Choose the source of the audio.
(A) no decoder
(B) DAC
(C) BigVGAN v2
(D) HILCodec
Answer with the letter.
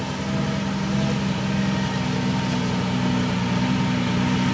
A